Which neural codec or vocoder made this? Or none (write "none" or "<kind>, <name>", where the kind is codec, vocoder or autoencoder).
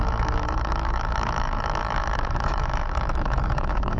autoencoder, DAC-VAE